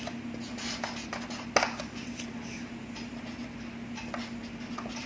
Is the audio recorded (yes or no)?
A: yes